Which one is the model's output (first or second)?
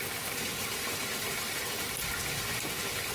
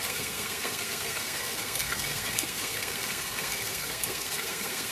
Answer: second